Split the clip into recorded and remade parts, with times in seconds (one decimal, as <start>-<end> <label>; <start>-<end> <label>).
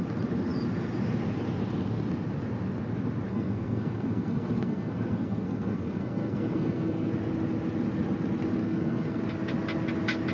0.0-3.3 recorded; 3.3-7.1 remade; 7.1-8.6 recorded; 8.6-9.2 remade; 9.2-10.3 recorded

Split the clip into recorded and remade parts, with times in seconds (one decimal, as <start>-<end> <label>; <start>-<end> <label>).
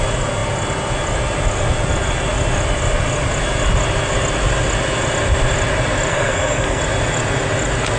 0.0-6.1 recorded; 6.1-6.8 remade; 6.8-8.0 recorded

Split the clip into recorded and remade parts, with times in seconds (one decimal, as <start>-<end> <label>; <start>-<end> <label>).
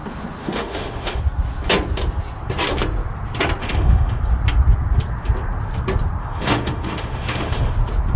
0.0-0.4 recorded; 0.4-1.2 remade; 1.2-3.6 recorded; 3.6-4.2 remade; 4.2-6.2 recorded; 6.2-7.7 remade; 7.7-8.2 recorded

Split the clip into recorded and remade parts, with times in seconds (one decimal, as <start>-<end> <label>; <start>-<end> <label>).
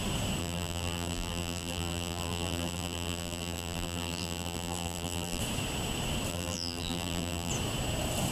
0.0-0.4 recorded; 0.4-5.4 remade; 5.4-6.3 recorded; 6.3-7.5 remade; 7.5-8.3 recorded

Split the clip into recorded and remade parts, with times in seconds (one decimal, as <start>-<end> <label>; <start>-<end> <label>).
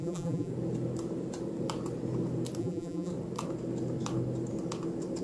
0.0-0.5 remade; 0.5-2.6 recorded; 2.6-3.1 remade; 3.1-5.2 recorded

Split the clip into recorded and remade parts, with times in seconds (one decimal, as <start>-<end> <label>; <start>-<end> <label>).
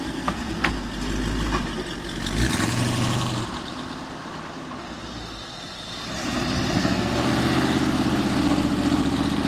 0.0-0.7 remade; 0.7-6.8 recorded; 6.8-7.3 remade; 7.3-9.5 recorded